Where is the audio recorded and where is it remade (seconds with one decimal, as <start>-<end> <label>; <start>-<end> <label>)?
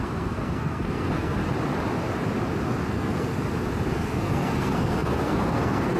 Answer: 0.0-1.4 remade; 1.4-2.9 recorded; 2.9-3.3 remade; 3.3-3.9 recorded; 3.9-6.0 remade